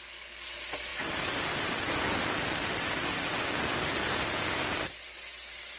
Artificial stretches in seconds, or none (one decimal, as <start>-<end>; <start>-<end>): none